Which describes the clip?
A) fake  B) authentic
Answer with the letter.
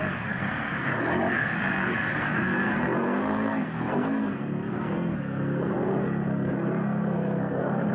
A